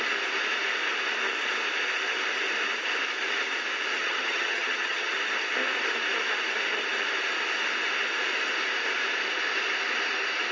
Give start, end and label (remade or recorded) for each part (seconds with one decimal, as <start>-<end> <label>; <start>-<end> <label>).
0.0-4.0 recorded; 4.0-5.1 remade; 5.1-10.5 recorded